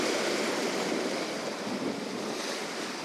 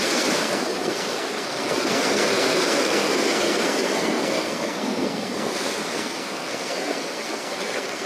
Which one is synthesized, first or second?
second